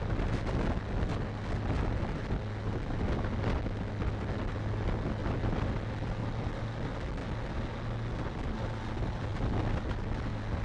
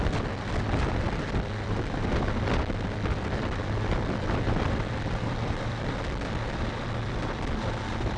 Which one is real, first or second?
first